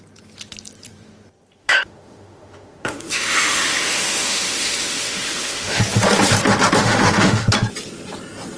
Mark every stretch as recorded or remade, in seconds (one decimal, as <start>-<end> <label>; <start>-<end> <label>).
0.0-1.6 recorded; 1.6-5.8 remade; 5.8-6.8 recorded; 6.8-7.5 remade; 7.5-8.6 recorded